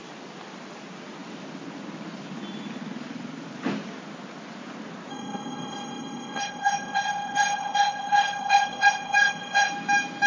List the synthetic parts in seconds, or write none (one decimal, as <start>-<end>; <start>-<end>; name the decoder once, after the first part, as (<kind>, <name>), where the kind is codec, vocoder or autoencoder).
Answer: 5.1-9.7 (codec, ZipCodec)